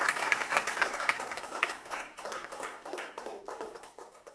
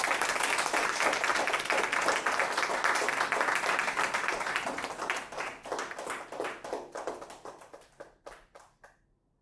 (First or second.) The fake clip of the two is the first